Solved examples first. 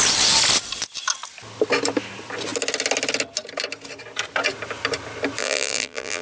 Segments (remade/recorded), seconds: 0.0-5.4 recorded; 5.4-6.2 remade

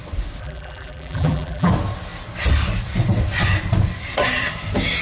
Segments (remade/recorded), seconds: 0.0-0.4 recorded; 0.4-1.7 remade; 1.7-5.0 recorded

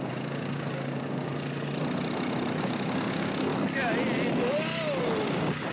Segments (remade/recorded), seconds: 0.0-1.3 remade; 1.3-2.6 recorded; 2.6-3.5 remade; 3.5-5.2 recorded; 5.2-5.7 remade